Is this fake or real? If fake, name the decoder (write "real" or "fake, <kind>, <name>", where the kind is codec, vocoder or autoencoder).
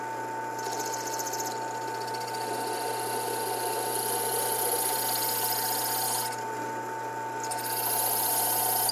real